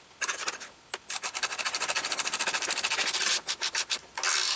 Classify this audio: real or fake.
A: real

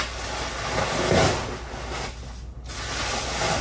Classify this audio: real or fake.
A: real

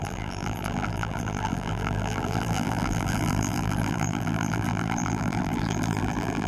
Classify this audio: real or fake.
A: fake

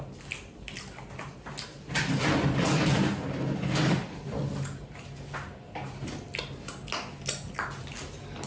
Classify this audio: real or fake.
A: real